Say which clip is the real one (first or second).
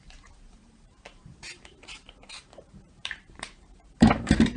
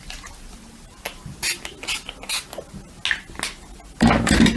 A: second